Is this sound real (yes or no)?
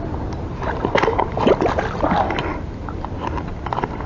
yes